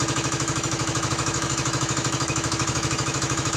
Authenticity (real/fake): fake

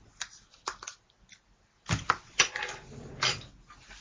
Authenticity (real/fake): real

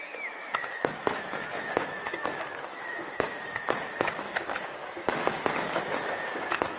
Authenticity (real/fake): fake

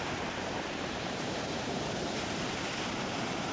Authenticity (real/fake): fake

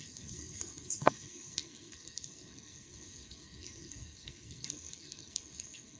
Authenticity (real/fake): fake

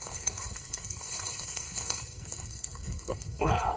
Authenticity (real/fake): fake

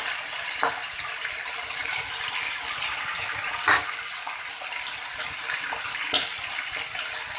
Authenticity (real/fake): real